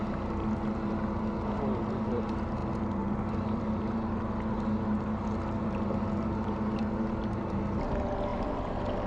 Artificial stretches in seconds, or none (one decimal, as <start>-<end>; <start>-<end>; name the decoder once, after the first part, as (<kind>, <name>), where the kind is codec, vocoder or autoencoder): none